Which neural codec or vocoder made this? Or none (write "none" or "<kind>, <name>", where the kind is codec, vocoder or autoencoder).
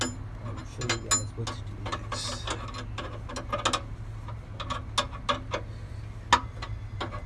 none